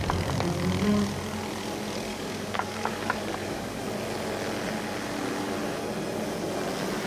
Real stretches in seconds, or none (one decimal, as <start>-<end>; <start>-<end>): 0.0-2.1; 3.8-7.1